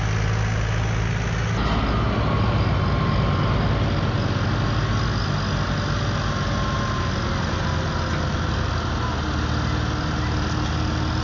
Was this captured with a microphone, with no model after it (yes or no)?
yes